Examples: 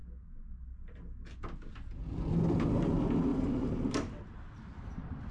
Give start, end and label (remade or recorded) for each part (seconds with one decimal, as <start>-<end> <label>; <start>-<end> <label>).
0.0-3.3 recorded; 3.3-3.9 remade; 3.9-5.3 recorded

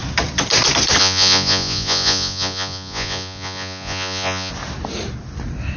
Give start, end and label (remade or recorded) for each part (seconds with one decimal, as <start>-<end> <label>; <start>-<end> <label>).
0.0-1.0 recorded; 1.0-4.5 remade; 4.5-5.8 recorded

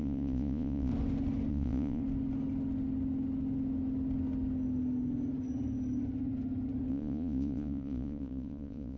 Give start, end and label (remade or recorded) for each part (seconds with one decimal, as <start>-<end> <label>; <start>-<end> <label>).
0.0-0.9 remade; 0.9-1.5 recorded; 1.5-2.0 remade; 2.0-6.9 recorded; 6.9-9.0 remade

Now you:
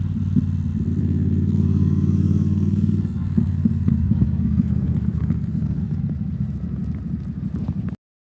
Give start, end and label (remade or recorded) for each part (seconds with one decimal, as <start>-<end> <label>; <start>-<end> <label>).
0.0-1.0 recorded; 1.0-6.0 remade; 6.0-8.4 recorded

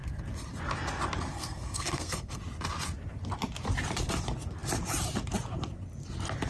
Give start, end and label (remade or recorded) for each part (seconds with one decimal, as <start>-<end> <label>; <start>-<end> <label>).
0.0-1.3 recorded; 1.3-2.4 remade; 2.4-6.5 recorded

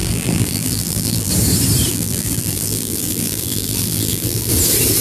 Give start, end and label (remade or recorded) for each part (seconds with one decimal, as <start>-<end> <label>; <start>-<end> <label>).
0.0-1.3 remade; 1.3-1.9 recorded; 1.9-4.5 remade; 4.5-5.0 recorded

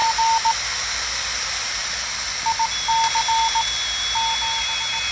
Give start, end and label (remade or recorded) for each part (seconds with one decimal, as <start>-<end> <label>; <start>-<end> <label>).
0.0-5.1 recorded